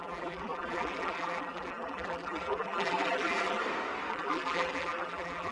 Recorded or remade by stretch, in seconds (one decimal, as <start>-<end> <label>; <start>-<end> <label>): 0.0-3.6 remade; 3.6-4.1 recorded; 4.1-5.5 remade